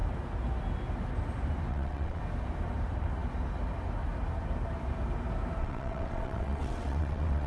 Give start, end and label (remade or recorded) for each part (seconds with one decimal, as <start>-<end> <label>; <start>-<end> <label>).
0.0-1.7 recorded; 1.7-2.2 remade; 2.2-5.6 recorded; 5.6-7.5 remade